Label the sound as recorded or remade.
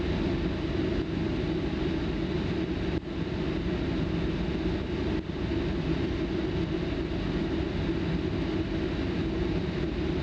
recorded